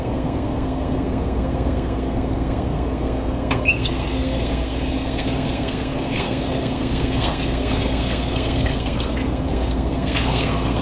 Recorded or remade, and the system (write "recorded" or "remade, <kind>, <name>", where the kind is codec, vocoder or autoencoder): remade, codec, SNAC